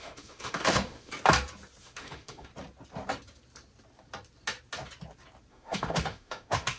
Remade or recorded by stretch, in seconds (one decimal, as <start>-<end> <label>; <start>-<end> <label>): 0.0-1.1 remade; 1.1-1.8 recorded; 1.8-2.5 remade; 2.5-5.5 recorded; 5.5-6.8 remade